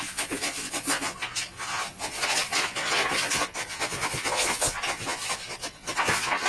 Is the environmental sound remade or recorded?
remade